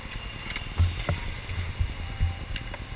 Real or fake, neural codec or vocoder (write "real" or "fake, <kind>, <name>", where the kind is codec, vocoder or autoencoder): real